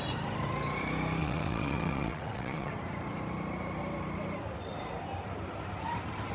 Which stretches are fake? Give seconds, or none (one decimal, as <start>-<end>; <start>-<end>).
1.2-2.7